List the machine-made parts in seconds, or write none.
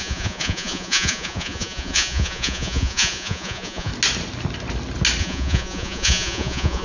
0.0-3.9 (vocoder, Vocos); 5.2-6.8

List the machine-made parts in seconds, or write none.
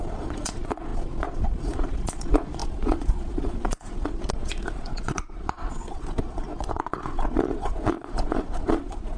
0.0-9.2 (vocoder, Vocos)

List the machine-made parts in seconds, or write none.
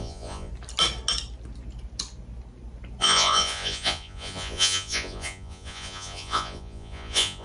0.0-0.5 (vocoder, Vocos); 3.0-7.4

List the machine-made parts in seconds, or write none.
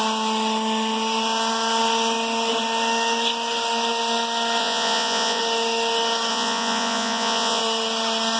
4.6-5.4 (vocoder, Vocos); 6.3-7.6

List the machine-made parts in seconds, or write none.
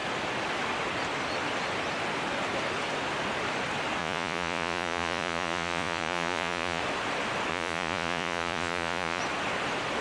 4.0-6.8 (vocoder, Vocos); 7.5-9.2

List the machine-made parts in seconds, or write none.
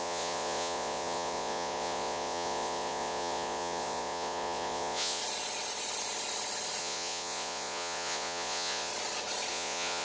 0.0-5.2 (vocoder, Vocos); 6.8-8.9; 9.5-10.0